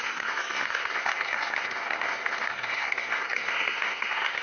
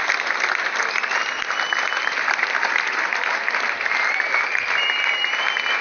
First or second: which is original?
second